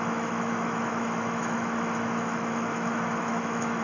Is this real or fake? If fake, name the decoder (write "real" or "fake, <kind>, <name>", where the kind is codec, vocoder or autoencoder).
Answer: fake, autoencoder, DAC-VAE